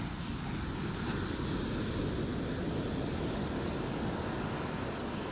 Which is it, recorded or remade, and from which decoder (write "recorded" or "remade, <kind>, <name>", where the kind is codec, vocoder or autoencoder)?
recorded